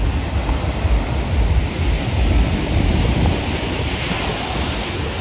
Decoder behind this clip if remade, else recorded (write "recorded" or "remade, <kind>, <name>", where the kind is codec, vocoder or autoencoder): recorded